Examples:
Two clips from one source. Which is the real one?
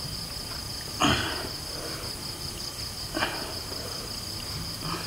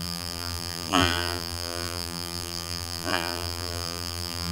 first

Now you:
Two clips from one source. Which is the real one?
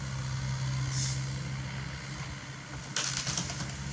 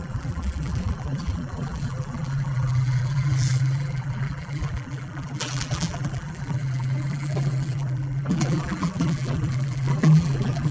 first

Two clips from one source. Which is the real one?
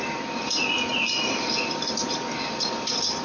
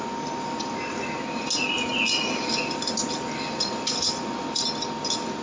second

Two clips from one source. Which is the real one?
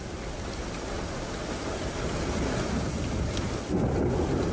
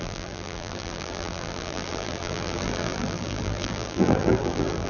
first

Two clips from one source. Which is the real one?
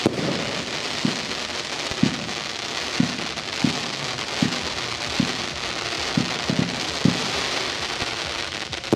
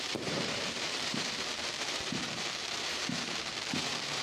first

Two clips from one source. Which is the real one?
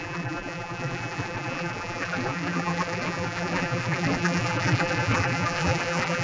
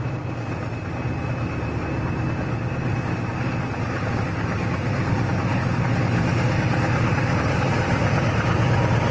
second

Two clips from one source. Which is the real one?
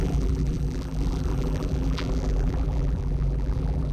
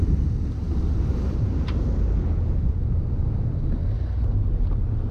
second